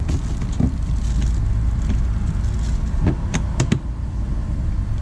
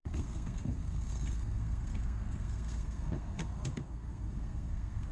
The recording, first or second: first